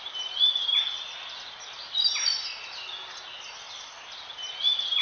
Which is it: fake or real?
real